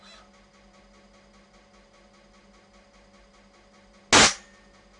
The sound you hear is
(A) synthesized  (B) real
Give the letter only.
B